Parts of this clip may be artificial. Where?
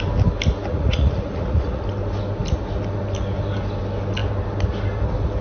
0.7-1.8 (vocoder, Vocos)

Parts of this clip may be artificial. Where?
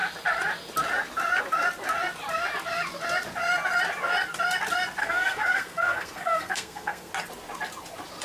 5.0-7.1 (codec, SNAC)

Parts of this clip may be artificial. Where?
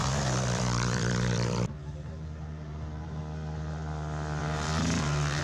0.0-3.2 (vocoder, BigVGAN v2); 4.4-5.4